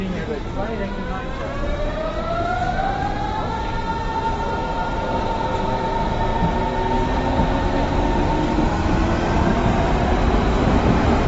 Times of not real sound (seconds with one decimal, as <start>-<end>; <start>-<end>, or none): none